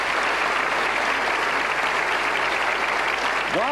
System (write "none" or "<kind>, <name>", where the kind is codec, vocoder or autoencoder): none